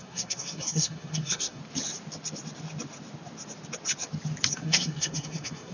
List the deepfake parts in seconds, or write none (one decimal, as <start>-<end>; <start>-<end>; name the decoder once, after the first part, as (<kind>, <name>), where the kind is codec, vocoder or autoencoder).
0.0-1.6 (codec, SNAC); 4.5-5.7